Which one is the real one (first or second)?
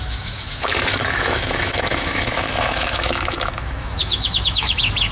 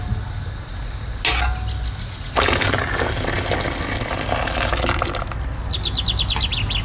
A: second